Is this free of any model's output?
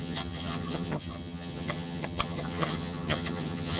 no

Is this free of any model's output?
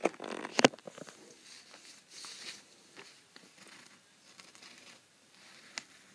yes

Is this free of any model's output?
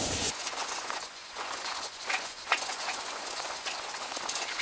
no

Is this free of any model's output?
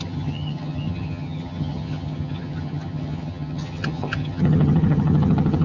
no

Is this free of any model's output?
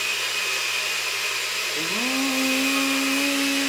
yes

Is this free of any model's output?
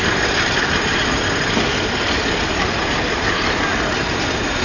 yes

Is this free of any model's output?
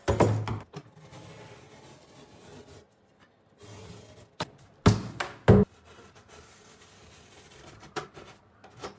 yes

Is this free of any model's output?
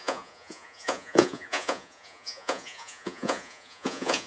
no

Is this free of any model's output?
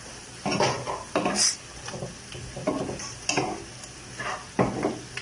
yes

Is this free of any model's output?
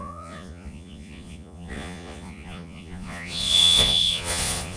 no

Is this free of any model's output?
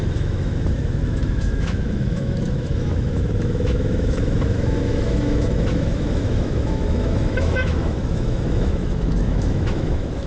no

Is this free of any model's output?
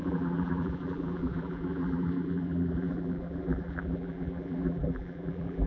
no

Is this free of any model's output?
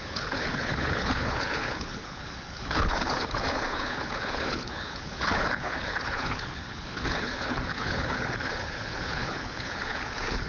no